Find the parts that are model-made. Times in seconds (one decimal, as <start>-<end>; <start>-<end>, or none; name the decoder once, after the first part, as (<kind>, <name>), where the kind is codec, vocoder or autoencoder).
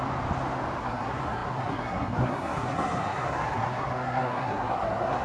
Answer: 0.8-5.2 (codec, SNAC)